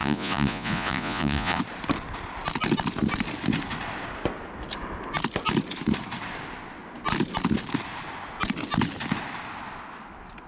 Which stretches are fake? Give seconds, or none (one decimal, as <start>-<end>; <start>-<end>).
0.0-1.6